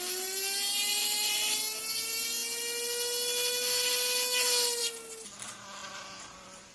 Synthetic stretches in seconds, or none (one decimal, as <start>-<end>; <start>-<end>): 0.9-1.6; 5.8-6.7